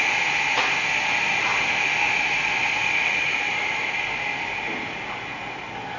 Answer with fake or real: real